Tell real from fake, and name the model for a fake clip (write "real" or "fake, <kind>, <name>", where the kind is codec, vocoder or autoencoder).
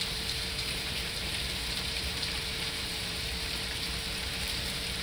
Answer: fake, vocoder, BigVGAN v2